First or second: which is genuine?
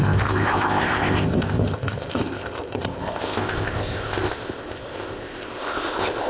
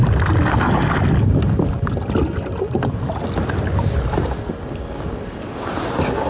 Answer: second